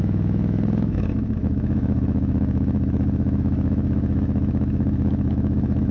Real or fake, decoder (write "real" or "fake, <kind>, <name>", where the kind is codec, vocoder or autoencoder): fake, autoencoder, DAC-VAE